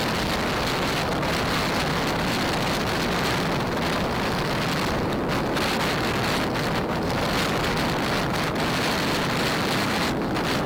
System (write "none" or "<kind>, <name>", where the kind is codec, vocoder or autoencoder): none